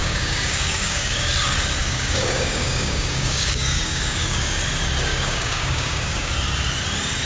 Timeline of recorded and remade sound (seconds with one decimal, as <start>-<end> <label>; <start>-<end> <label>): 0.0-1.3 remade; 1.3-1.8 recorded; 1.8-4.6 remade; 4.6-5.1 recorded; 5.1-6.3 remade; 6.3-7.3 recorded